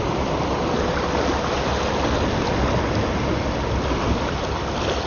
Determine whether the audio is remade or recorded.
recorded